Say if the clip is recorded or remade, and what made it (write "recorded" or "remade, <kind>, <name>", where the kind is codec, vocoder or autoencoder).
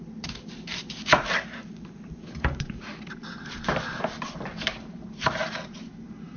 remade, vocoder, BigVGAN v2